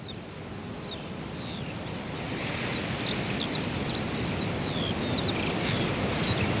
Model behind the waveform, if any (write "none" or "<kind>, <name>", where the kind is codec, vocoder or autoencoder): none